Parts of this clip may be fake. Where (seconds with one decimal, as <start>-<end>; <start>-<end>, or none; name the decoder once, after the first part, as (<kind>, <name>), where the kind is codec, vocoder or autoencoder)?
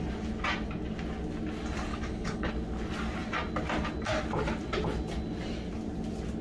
1.9-2.5 (codec, HILCodec)